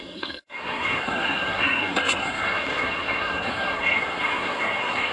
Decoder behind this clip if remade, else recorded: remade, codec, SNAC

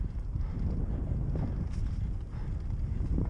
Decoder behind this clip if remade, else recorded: recorded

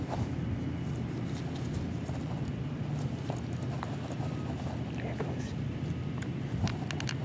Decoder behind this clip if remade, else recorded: recorded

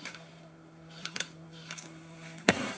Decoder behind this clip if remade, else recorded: remade, codec, SNAC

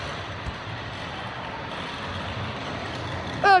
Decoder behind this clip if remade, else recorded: recorded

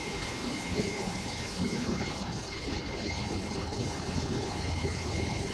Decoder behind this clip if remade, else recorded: remade, codec, HILCodec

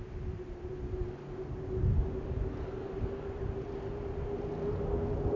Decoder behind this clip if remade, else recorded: recorded